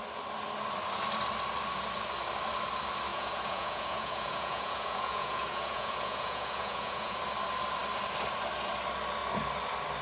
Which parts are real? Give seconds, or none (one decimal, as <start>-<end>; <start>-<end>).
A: 0.0-3.1; 7.2-10.0

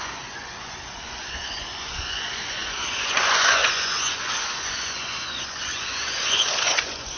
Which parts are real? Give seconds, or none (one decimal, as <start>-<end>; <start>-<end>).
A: none

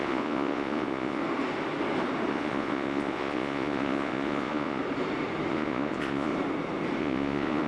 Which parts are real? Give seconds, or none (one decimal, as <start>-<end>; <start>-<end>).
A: 1.2-2.3; 4.8-5.5; 6.3-7.0